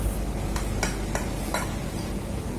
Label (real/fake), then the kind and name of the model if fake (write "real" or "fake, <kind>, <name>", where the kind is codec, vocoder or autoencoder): real